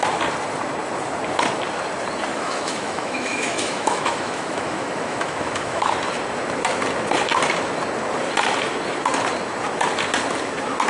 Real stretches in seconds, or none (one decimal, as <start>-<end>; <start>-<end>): 0.0-2.3; 5.9-10.9